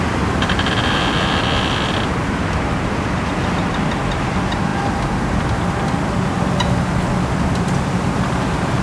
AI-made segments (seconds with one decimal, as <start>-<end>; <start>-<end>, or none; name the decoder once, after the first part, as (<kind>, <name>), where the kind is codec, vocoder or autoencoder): none

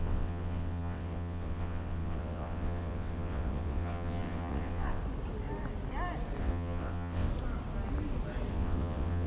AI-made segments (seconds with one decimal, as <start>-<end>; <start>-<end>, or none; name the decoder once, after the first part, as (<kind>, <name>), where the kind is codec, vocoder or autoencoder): 0.0-5.0 (vocoder, WaveNeXt); 6.4-7.3; 8.5-9.3

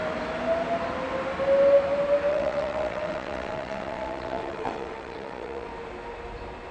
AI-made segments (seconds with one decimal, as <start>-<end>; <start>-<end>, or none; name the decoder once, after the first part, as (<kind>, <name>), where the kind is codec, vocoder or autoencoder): 2.3-5.7 (vocoder, WaveNeXt)

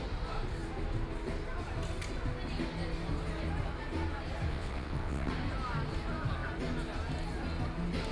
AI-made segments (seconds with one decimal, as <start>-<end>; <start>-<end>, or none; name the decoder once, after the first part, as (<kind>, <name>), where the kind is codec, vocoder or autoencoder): 4.5-5.3 (vocoder, WaveNeXt)

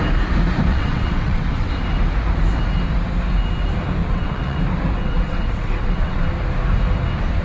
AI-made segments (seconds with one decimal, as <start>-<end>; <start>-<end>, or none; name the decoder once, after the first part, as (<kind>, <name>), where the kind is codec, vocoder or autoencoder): 0.7-1.7 (vocoder, WaveNeXt); 4.0-4.6; 5.0-6.2

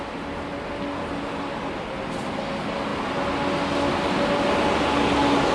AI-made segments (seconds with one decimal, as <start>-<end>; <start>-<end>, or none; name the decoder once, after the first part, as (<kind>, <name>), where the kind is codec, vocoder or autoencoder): none